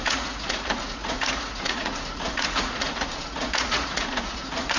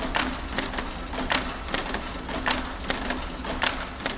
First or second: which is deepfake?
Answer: first